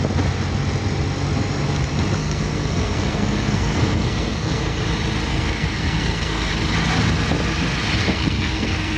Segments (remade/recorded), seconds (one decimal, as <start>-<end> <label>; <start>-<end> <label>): 0.0-2.2 recorded; 2.2-4.8 remade; 4.8-5.3 recorded; 5.3-6.5 remade; 6.5-8.0 recorded; 8.0-9.0 remade

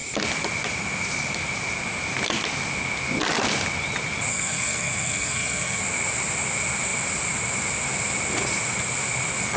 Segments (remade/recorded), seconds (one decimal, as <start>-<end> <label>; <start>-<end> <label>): 0.0-4.3 recorded; 4.3-5.8 remade; 5.8-9.6 recorded

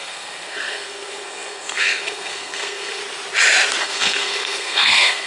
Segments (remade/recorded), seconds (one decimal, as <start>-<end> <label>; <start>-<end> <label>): 0.0-3.0 remade; 3.0-3.8 recorded; 3.8-5.3 remade

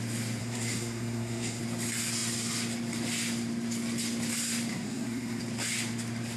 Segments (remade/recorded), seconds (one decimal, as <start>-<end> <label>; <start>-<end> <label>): 0.0-0.4 recorded; 0.4-1.6 remade; 1.6-4.7 recorded; 4.7-5.4 remade; 5.4-6.4 recorded

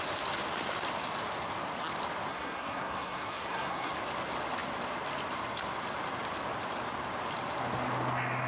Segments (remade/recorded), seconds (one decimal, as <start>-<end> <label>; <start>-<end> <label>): 0.0-2.3 recorded; 2.3-3.9 remade; 3.9-8.5 recorded

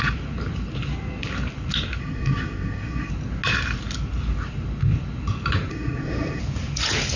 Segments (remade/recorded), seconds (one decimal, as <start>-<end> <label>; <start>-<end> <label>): 0.0-2.0 recorded; 2.0-3.1 remade; 3.1-5.7 recorded; 5.7-6.4 remade; 6.4-7.2 recorded

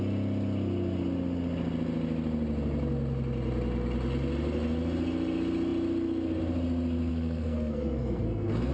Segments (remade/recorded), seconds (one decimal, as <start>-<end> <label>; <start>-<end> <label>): 0.0-7.1 recorded; 7.1-8.7 remade